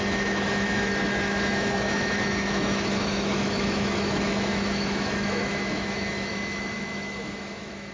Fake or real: fake